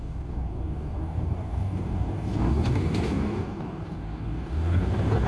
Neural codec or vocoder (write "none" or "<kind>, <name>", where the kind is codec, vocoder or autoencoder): codec, DAC